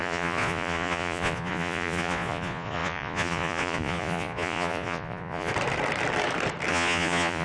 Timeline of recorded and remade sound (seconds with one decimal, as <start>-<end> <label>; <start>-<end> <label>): 0.0-5.5 remade; 5.5-6.7 recorded; 6.7-7.4 remade